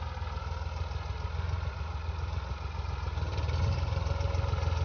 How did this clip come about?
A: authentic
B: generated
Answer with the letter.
A